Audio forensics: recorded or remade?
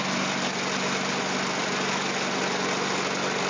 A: recorded